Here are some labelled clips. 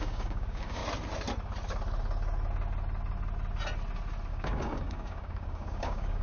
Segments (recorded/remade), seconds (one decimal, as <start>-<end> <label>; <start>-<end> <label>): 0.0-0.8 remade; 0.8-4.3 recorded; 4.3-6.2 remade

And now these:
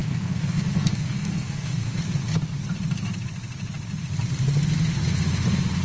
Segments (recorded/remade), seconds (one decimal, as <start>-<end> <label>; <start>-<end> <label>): 0.0-2.0 remade; 2.0-5.8 recorded

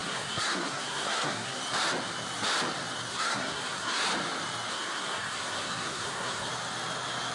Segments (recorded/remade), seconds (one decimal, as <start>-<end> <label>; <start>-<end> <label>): 0.0-1.6 remade; 1.6-3.1 recorded; 3.1-4.0 remade; 4.0-4.7 recorded; 4.7-6.5 remade; 6.5-7.3 recorded